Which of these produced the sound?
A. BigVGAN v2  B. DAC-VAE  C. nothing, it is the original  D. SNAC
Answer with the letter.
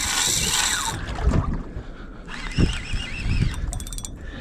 C